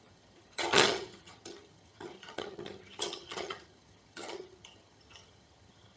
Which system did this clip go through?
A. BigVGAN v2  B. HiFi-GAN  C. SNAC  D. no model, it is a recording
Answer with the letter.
B